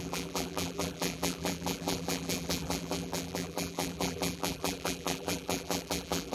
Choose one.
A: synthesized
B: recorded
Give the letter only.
A